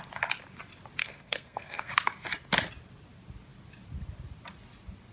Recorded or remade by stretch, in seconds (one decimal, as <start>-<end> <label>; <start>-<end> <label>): 0.0-1.0 recorded; 1.0-1.9 remade; 1.9-5.1 recorded